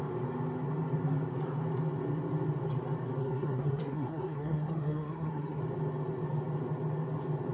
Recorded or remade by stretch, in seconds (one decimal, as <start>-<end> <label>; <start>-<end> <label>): 0.0-3.2 recorded; 3.2-5.6 remade; 5.6-7.5 recorded